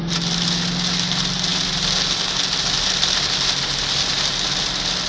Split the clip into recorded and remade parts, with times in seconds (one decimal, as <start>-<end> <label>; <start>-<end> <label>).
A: 0.0-5.1 recorded